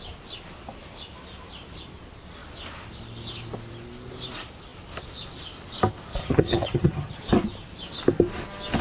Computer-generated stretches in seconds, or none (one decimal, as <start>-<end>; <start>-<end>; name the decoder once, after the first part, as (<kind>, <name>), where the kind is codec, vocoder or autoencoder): 6.2-7.2 (vocoder, HiFi-GAN)